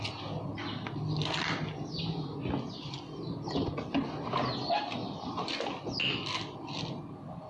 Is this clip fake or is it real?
real